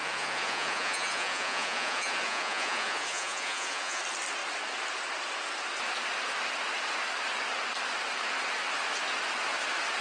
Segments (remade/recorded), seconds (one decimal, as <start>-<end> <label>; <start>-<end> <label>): 0.0-4.0 remade; 4.0-10.0 recorded